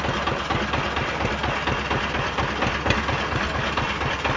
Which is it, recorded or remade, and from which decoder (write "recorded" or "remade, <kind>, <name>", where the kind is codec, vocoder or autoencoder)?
recorded